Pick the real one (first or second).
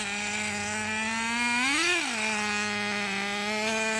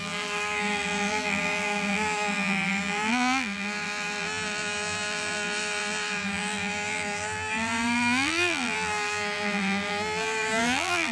first